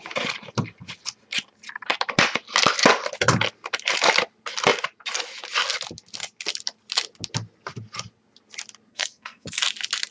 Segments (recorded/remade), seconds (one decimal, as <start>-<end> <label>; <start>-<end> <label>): 0.0-8.9 recorded; 8.9-9.6 remade; 9.6-10.1 recorded